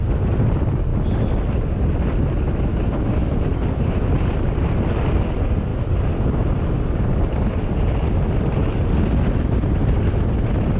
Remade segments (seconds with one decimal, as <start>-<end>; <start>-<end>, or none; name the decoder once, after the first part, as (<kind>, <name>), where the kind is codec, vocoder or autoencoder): 0.0-0.9 (vocoder, BigVGAN v2); 3.0-3.5; 4.1-8.6